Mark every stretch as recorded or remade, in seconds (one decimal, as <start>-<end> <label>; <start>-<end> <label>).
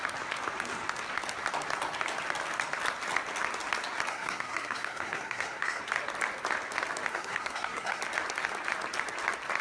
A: 0.0-4.1 recorded; 4.1-5.8 remade; 5.8-7.1 recorded; 7.1-8.0 remade; 8.0-9.6 recorded